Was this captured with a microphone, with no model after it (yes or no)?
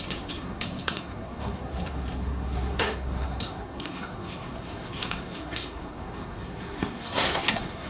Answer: no